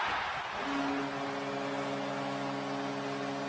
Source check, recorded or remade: recorded